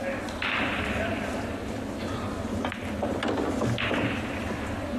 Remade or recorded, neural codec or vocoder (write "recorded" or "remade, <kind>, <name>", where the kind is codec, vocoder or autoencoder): recorded